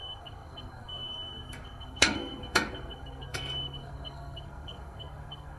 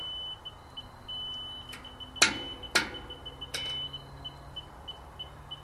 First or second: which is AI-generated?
first